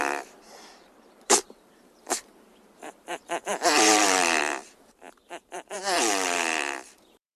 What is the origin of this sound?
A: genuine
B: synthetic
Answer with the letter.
B